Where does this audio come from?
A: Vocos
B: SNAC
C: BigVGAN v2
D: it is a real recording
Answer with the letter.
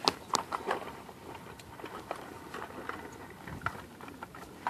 D